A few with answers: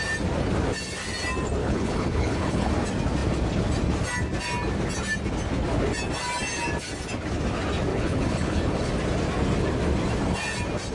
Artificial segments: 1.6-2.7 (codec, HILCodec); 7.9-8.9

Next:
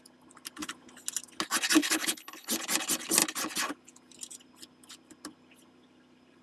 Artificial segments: 1.8-2.5 (codec, HILCodec)

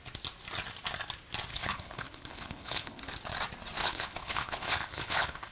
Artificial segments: 1.5-3.0 (codec, HILCodec); 3.8-5.5

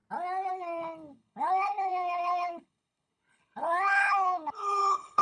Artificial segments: 0.5-5.2 (codec, HILCodec)

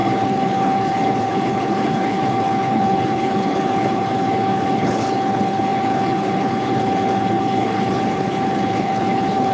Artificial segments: 0.0-9.5 (codec, HILCodec)